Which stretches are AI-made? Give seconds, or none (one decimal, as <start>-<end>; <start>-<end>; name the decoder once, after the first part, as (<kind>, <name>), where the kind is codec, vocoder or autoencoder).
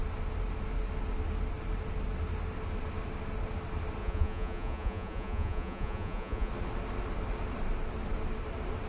4.0-6.5 (vocoder, Vocos)